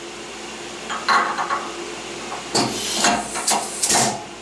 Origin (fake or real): real